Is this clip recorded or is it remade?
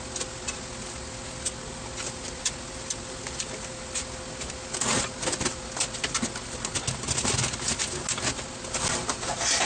recorded